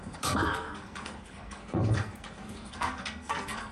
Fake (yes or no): yes